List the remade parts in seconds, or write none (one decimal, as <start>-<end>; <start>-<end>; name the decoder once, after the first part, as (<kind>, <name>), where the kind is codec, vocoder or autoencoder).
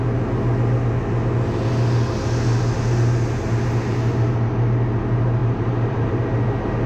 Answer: 5.4-6.2 (vocoder, BigVGAN v2)